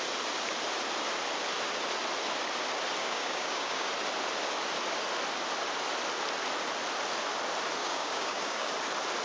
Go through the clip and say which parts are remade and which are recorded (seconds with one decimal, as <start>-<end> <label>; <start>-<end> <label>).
0.0-3.0 recorded; 3.0-3.9 remade; 3.9-7.8 recorded; 7.8-8.7 remade; 8.7-9.2 recorded